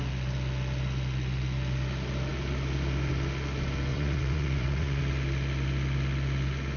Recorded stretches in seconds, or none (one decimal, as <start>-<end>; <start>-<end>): 0.0-3.9; 5.0-6.8